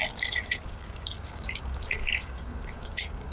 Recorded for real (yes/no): no